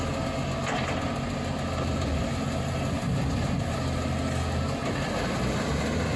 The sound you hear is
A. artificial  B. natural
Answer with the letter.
B